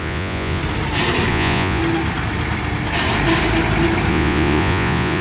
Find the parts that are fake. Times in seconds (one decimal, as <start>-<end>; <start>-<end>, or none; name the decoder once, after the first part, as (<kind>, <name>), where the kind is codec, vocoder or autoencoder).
0.0-0.6 (vocoder, Vocos); 1.3-1.8; 4.1-5.2